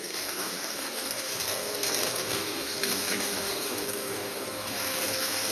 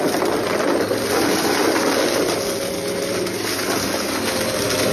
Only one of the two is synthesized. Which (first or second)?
first